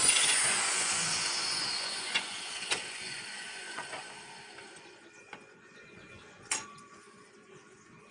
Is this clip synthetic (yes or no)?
yes